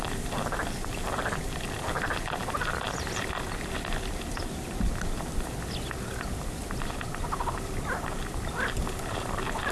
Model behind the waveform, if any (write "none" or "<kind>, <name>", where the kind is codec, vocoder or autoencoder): none